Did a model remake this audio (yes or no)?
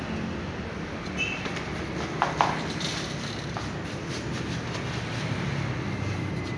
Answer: no